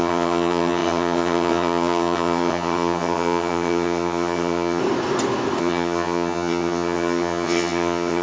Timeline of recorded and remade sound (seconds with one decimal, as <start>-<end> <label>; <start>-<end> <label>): 0.0-4.8 remade; 4.8-5.6 recorded; 5.6-8.2 remade